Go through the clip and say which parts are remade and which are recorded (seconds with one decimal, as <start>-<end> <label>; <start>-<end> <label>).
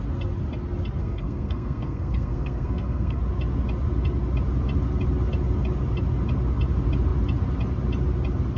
0.0-1.0 recorded; 1.0-3.2 remade; 3.2-8.6 recorded